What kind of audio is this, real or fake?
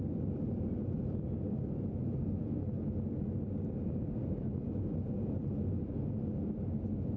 real